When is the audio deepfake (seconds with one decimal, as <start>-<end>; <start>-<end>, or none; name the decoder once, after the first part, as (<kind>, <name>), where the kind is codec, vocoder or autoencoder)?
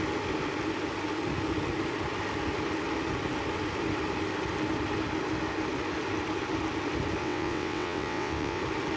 7.2-8.6 (vocoder, WaveNeXt)